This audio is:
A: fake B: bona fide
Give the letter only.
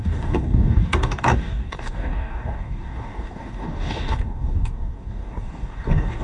A